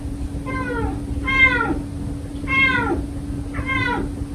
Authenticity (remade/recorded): recorded